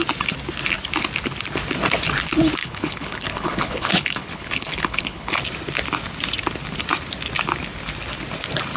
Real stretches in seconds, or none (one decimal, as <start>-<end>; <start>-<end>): 0.0-2.6; 5.4-8.8